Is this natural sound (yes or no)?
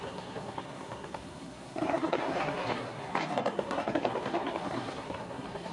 no